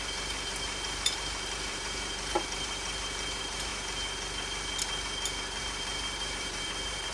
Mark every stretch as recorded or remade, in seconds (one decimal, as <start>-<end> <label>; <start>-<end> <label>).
0.0-3.7 remade; 3.7-5.6 recorded; 5.6-7.1 remade